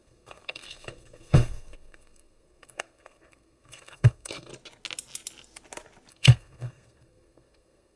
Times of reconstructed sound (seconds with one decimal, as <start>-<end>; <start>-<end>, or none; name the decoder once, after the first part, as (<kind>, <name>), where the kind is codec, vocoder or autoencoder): 0.0-4.5 (codec, SNAC); 6.1-8.0